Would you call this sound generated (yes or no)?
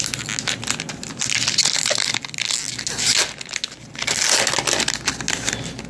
no